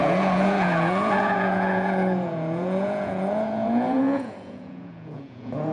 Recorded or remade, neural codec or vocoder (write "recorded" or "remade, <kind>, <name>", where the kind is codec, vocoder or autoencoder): remade, vocoder, Vocos